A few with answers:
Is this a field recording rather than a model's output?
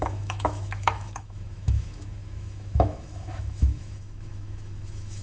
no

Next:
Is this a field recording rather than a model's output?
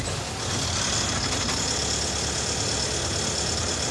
yes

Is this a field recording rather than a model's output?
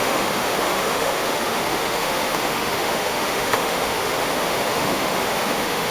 no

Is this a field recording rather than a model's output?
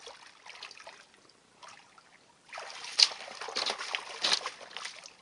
yes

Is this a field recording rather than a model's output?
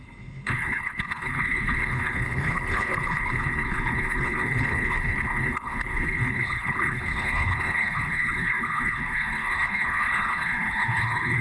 no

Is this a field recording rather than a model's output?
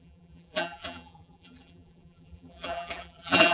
no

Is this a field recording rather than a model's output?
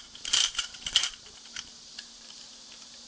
no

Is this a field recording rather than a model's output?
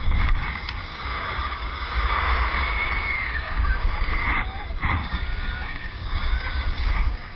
no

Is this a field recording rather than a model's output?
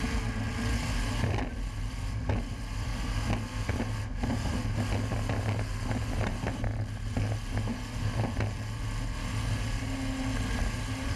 yes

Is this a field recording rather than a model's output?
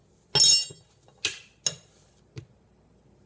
yes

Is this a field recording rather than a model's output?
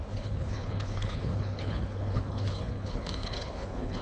no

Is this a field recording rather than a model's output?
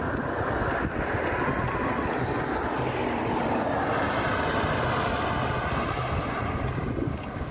yes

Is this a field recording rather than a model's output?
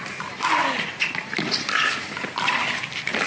yes